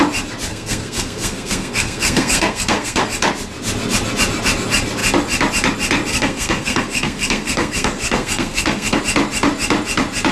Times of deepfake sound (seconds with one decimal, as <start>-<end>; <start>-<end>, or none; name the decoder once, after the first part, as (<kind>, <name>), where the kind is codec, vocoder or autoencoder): 0.5-3.0 (codec, SNAC); 6.1-9.0